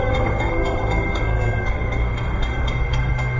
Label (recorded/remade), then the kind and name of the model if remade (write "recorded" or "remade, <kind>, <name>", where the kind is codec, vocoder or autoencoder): remade, codec, SNAC